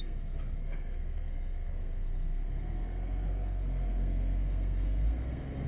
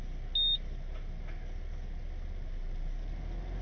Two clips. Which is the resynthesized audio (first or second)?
first